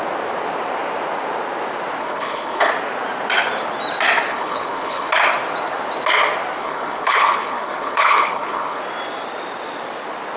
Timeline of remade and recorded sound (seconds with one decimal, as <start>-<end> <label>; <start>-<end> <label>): 0.0-2.0 recorded; 2.0-2.7 remade; 2.7-4.3 recorded; 4.3-5.1 remade; 5.1-6.6 recorded; 6.6-8.8 remade; 8.8-10.4 recorded